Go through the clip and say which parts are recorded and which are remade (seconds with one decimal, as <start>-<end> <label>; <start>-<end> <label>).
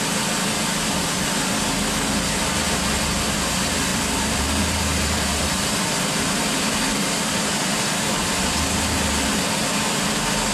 0.0-3.9 recorded; 3.9-9.1 remade; 9.1-10.5 recorded